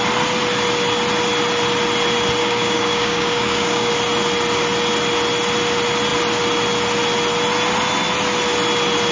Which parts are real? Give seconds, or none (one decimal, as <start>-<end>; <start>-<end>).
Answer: 0.0-2.4; 3.9-9.1